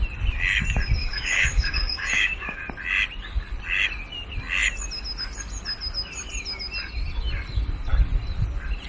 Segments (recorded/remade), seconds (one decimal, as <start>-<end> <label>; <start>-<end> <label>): 0.0-1.0 recorded; 1.0-2.6 remade; 2.6-8.9 recorded